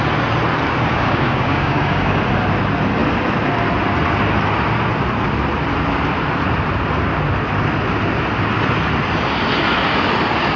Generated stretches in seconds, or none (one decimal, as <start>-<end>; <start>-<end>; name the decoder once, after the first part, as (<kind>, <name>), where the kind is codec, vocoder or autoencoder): 0.9-2.2 (codec, DAC)